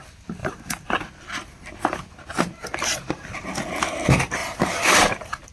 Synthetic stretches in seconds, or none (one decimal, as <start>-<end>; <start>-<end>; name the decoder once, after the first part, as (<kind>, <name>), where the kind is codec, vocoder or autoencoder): 0.4-1.0 (vocoder, BigVGAN v2); 4.4-5.5